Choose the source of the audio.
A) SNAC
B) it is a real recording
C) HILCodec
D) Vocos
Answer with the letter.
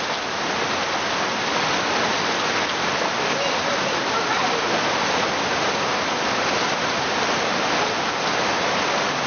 B